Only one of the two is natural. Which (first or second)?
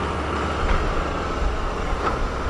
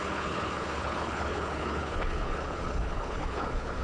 first